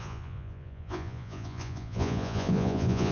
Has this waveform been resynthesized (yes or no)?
yes